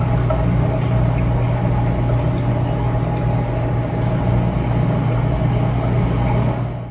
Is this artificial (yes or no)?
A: no